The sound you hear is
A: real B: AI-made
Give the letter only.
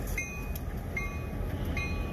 A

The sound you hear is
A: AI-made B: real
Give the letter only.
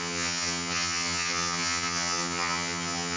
A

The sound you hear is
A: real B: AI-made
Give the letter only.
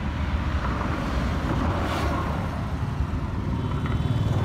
B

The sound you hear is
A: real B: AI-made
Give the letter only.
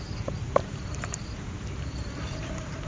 B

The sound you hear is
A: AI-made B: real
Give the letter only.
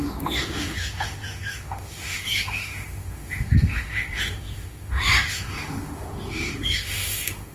A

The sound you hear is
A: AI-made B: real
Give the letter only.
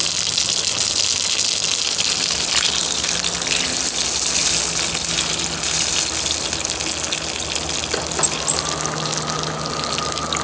B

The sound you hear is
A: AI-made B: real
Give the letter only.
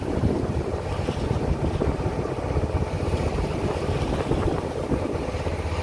B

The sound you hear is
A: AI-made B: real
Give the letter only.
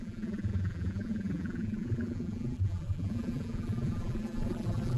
A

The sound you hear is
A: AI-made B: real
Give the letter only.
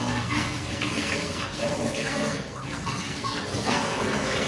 A